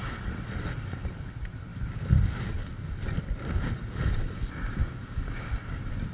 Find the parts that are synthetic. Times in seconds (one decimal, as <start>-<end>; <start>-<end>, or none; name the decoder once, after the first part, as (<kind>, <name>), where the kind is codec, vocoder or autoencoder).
4.8-5.5 (codec, DAC)